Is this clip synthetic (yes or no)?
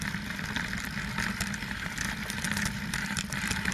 no